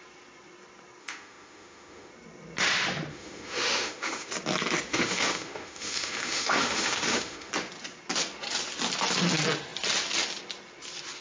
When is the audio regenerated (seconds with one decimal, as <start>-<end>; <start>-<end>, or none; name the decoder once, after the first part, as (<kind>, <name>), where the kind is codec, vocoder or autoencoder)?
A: 1.0-2.1 (autoencoder, DAC-VAE); 3.1-4.3; 4.9-7.5